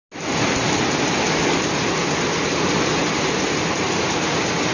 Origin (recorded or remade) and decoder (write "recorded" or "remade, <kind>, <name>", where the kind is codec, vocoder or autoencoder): recorded